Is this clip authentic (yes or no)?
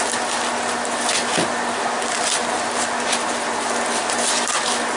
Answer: yes